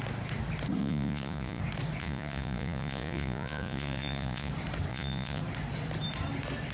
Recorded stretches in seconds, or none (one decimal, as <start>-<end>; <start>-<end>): 0.0-0.8; 1.6-2.0; 4.5-4.9; 5.4-6.7